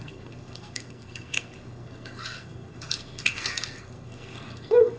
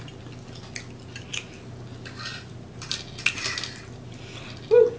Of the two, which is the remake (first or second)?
first